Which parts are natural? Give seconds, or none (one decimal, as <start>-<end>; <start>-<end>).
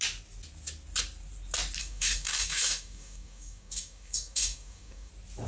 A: 0.0-1.8; 5.1-5.5